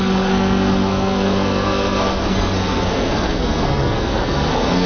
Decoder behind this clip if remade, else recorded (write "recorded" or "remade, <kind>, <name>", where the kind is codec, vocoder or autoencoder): remade, codec, SNAC